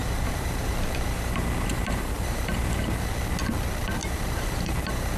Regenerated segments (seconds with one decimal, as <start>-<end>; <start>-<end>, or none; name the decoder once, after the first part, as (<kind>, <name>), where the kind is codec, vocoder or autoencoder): 0.0-3.1 (vocoder, BigVGAN v2); 4.0-5.2

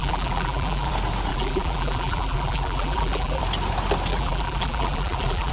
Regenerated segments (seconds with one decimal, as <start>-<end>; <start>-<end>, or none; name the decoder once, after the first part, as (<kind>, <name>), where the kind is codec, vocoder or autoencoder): 0.0-0.9 (vocoder, BigVGAN v2); 1.3-3.4; 4.1-5.5